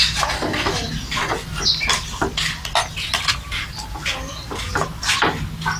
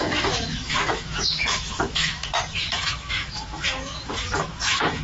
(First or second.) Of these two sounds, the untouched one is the first